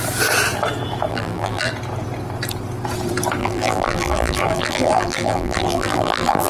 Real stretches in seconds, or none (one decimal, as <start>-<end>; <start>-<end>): 0.0-1.1; 1.7-3.4